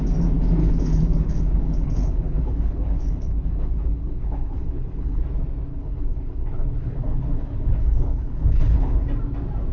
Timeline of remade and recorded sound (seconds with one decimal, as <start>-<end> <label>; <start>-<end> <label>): 0.0-0.6 recorded; 0.6-5.2 remade; 5.2-5.7 recorded; 5.7-9.0 remade; 9.0-9.7 recorded